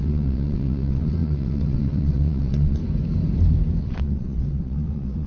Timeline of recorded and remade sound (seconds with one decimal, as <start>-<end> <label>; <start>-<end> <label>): 0.0-2.8 remade; 2.8-3.8 recorded; 3.8-5.3 remade